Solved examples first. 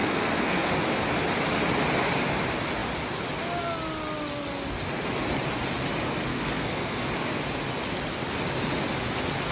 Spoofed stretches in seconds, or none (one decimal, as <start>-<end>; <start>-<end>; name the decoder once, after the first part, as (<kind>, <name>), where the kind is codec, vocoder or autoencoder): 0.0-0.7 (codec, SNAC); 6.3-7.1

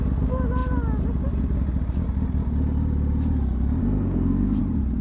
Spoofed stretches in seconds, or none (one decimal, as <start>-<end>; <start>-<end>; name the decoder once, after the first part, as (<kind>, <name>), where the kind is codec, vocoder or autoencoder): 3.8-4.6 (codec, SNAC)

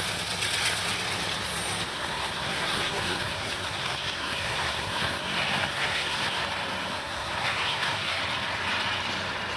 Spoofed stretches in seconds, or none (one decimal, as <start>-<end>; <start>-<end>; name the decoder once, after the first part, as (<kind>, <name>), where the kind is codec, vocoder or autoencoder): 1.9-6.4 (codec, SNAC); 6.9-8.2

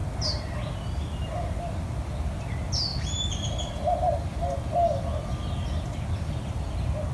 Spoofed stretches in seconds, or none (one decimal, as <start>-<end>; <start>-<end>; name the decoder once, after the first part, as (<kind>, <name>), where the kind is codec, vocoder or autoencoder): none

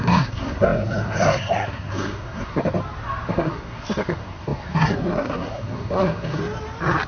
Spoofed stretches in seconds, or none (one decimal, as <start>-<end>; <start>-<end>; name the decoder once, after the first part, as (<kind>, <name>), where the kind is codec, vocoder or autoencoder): 0.0-2.6 (codec, SNAC); 3.3-6.4